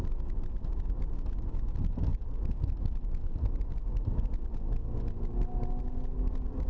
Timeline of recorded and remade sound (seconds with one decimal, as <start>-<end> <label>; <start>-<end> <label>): 0.0-6.7 recorded